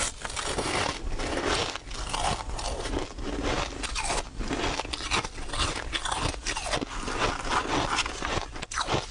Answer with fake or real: real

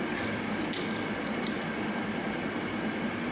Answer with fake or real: real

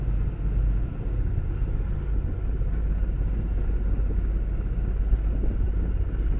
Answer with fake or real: real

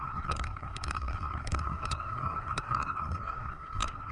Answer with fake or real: fake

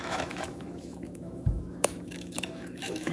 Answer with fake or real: fake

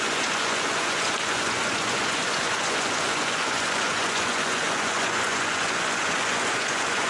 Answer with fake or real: fake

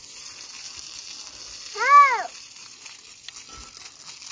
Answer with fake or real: real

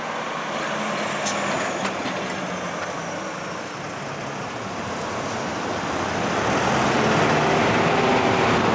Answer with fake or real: real